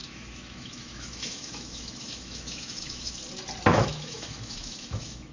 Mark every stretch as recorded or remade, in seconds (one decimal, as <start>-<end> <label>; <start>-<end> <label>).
0.0-3.2 remade; 3.2-3.7 recorded; 3.7-5.3 remade